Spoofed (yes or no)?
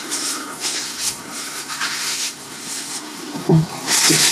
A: yes